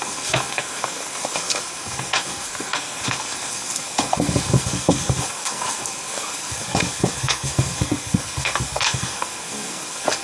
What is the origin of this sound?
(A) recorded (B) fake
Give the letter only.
B